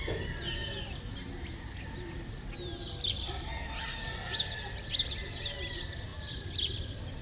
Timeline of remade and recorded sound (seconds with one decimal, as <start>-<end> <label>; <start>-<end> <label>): 0.0-7.2 recorded